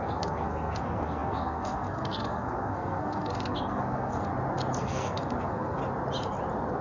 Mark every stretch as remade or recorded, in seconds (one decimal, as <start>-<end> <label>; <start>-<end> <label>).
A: 0.0-4.3 remade; 4.3-4.8 recorded; 4.8-5.8 remade; 5.8-6.8 recorded